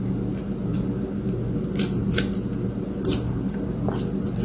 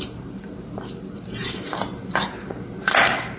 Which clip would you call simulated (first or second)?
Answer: second